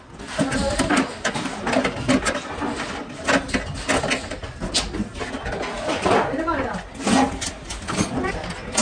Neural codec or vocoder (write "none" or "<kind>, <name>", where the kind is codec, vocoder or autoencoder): none